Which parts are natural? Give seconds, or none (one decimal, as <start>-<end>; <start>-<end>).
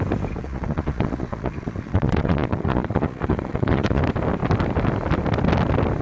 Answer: 0.0-0.4; 4.0-6.0